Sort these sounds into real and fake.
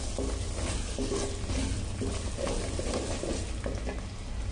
real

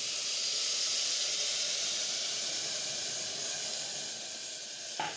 real